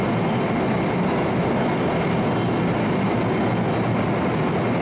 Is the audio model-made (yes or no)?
no